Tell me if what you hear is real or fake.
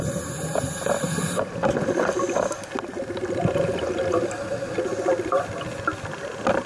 real